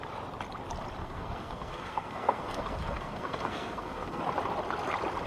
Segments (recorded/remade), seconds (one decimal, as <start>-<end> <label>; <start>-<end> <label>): 0.0-1.0 recorded; 1.0-4.2 remade; 4.2-5.3 recorded